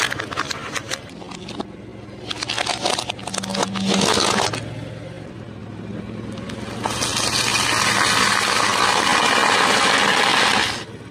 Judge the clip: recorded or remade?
recorded